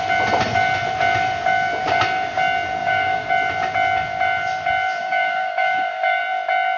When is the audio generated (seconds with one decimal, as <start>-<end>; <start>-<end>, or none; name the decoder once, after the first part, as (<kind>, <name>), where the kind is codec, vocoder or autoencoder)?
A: 2.8-3.3 (codec, DAC); 5.0-6.2